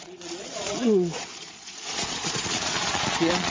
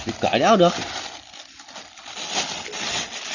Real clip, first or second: second